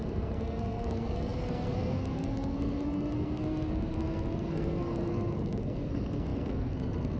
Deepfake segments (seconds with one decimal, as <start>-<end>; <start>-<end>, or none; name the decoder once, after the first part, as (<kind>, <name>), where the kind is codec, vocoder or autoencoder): 0.0-7.2 (codec, SNAC)